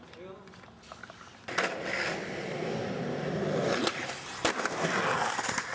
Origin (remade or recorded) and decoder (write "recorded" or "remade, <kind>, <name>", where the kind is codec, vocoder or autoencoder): recorded